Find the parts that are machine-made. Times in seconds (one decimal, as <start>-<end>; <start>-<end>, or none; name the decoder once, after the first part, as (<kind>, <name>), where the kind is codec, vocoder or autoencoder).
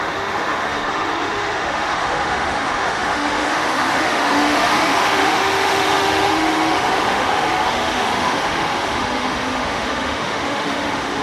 0.0-11.2 (autoencoder, DAC-VAE)